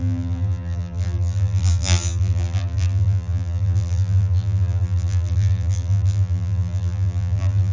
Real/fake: fake